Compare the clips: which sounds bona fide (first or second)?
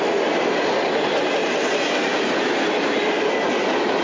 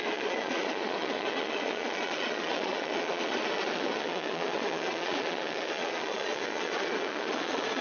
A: first